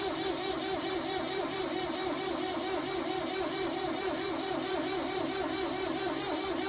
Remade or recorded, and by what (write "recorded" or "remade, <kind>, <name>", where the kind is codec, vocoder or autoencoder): remade, vocoder, BigVGAN v2